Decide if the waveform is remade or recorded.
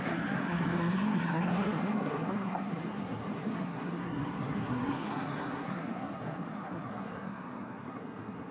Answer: remade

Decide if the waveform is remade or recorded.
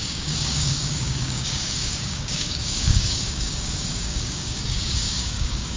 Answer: remade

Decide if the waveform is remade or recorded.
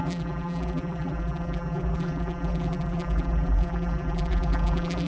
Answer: remade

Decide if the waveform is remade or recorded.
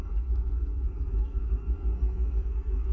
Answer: remade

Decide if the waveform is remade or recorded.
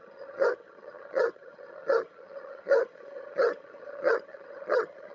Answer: remade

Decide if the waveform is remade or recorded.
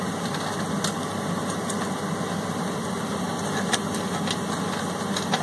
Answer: recorded